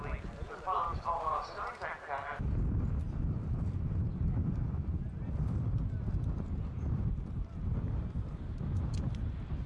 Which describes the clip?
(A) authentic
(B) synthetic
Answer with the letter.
A